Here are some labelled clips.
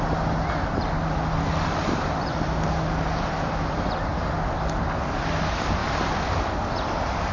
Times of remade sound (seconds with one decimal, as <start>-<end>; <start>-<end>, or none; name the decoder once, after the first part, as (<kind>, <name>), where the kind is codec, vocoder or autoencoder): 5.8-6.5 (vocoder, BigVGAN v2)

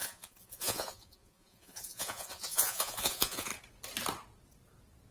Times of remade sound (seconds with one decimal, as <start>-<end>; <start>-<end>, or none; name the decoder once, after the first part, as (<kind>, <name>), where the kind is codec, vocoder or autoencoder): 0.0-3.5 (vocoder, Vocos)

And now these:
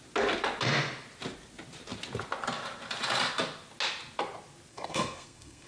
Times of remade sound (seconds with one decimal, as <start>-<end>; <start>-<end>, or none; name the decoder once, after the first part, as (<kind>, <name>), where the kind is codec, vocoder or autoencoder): 4.7-5.7 (codec, SNAC)

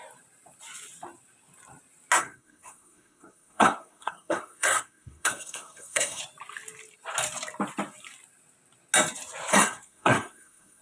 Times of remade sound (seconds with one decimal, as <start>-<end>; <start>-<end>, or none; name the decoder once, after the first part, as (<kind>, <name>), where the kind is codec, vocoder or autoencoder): 2.2-6.2 (codec, SNAC); 9.5-10.8

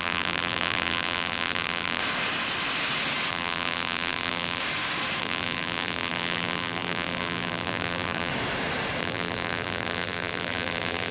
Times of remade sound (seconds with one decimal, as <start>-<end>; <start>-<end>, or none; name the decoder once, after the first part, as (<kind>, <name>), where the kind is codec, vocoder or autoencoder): 0.0-2.0 (vocoder, BigVGAN v2); 3.3-4.6; 5.2-8.3; 9.0-11.1

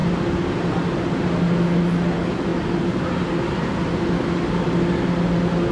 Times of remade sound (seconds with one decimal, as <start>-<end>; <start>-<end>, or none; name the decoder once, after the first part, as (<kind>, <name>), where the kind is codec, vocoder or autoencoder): none